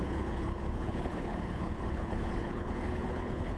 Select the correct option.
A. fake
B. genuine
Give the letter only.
A